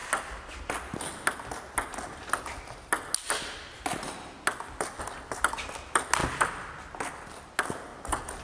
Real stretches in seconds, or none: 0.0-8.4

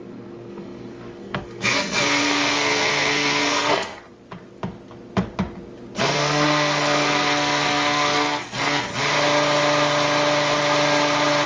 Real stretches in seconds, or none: 4.0-6.0; 8.9-11.5